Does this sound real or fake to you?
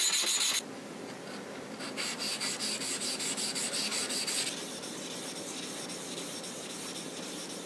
real